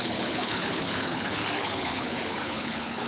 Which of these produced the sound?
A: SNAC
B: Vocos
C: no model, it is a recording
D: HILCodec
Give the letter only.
D